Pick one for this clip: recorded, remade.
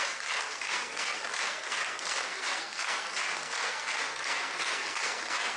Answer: remade